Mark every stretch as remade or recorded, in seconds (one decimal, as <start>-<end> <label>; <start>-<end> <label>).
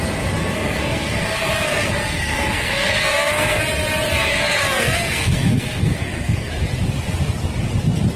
0.0-0.4 recorded; 0.4-3.6 remade; 3.6-4.2 recorded; 4.2-6.5 remade; 6.5-8.2 recorded